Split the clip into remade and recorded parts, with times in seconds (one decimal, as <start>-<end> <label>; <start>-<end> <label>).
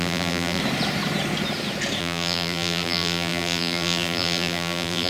0.0-0.6 remade; 0.6-2.0 recorded; 2.0-5.1 remade